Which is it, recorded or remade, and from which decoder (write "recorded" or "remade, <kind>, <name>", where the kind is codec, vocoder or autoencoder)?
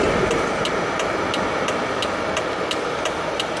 recorded